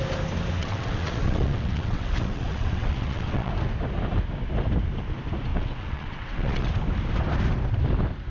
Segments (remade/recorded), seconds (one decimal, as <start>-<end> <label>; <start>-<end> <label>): 0.0-0.6 recorded; 0.6-3.5 remade; 3.5-5.5 recorded; 5.5-6.7 remade; 6.7-8.3 recorded